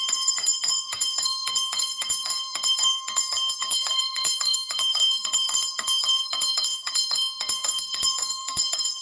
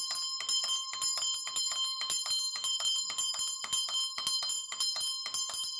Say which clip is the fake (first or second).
first